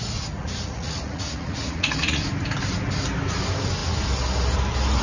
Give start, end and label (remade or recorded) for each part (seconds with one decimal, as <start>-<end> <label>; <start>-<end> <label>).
0.0-0.4 recorded; 0.4-2.2 remade; 2.2-5.0 recorded